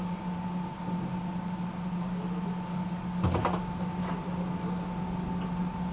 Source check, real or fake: real